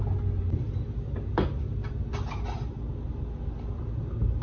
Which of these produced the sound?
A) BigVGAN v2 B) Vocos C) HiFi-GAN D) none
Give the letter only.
D